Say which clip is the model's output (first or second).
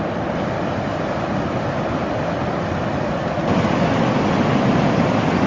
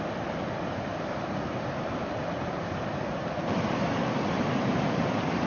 second